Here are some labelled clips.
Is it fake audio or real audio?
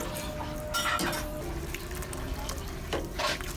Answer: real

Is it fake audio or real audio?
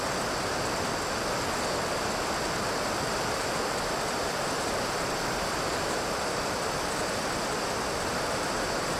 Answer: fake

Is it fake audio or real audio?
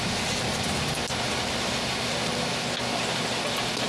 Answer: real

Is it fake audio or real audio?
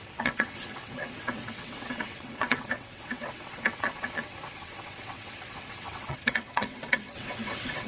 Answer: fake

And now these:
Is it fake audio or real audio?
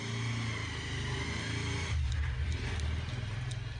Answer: real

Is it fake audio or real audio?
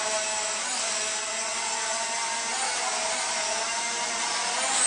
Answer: real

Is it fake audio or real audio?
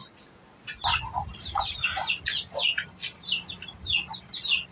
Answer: real